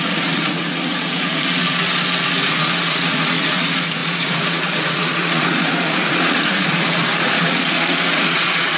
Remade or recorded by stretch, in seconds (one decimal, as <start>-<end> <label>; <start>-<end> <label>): 0.0-1.4 remade; 1.4-2.4 recorded; 2.4-8.8 remade